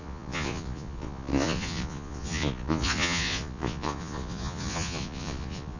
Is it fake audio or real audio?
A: fake